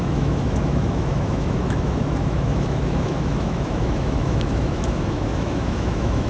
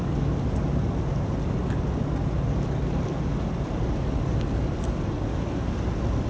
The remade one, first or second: first